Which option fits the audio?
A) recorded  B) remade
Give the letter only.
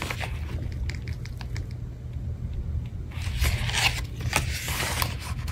A